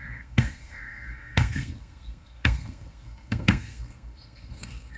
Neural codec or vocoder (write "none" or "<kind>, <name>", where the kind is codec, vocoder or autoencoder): codec, SNAC